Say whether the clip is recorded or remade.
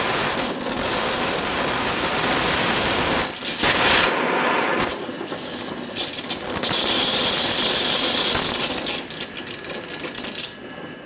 recorded